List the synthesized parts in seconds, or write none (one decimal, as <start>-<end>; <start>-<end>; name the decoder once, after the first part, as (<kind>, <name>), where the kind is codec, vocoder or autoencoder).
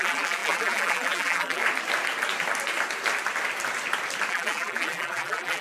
0.0-1.6 (vocoder, BigVGAN v2); 4.3-5.6